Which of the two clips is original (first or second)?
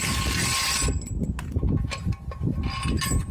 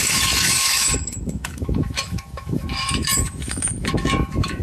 first